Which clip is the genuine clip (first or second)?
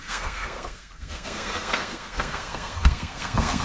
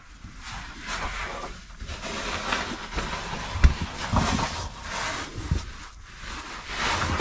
second